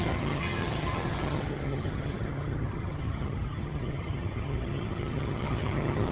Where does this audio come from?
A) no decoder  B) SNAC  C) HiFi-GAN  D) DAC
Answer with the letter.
C